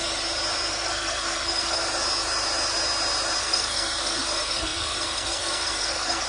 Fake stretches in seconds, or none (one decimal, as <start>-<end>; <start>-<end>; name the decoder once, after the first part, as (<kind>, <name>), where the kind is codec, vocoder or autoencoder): 0.7-1.8 (codec, SNAC); 3.4-6.3